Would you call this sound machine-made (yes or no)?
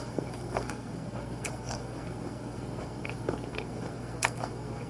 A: yes